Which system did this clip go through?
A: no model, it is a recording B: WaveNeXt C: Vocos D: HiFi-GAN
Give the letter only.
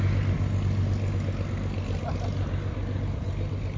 A